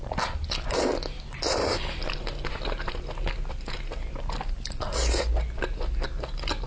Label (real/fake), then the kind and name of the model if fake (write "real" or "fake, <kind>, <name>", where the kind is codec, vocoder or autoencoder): real